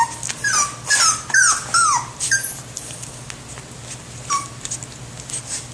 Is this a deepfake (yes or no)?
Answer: no